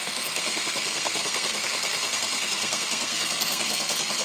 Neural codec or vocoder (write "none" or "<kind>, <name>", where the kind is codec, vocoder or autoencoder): codec, SNAC